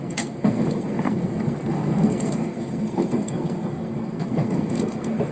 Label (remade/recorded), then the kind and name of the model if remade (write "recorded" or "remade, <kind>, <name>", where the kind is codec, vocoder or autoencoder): remade, codec, SNAC